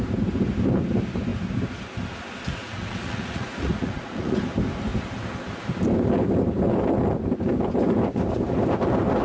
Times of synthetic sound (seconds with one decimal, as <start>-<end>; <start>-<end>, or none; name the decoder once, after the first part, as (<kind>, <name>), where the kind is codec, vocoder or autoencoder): 2.6-4.4 (vocoder, Vocos)